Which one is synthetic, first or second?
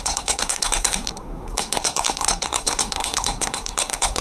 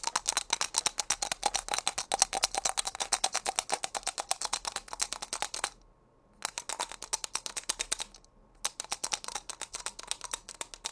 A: first